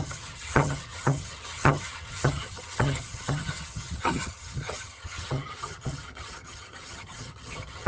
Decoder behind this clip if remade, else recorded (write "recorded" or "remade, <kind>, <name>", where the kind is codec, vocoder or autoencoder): remade, vocoder, HiFi-GAN